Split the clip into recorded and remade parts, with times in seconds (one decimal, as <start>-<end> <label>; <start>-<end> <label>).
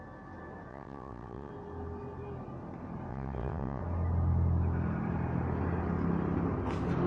0.0-0.7 recorded; 0.7-1.5 remade; 1.5-3.1 recorded; 3.1-3.8 remade; 3.8-7.1 recorded